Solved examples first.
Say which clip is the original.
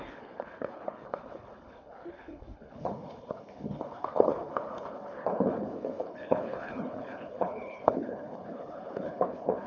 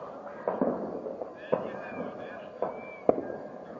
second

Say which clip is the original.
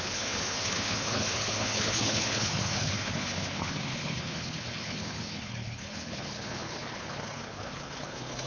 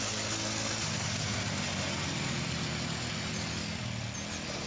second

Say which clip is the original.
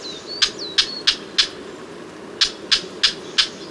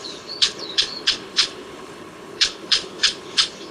first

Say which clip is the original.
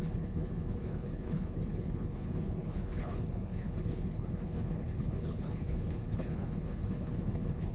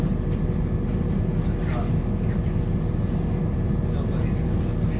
second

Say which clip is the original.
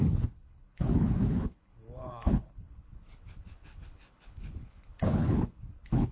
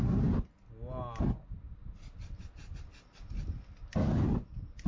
second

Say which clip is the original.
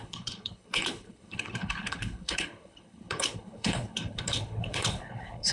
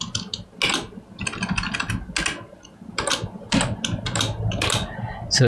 second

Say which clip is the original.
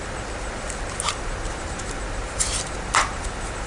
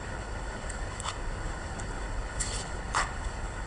first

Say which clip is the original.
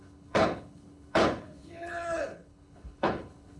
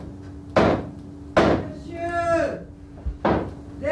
second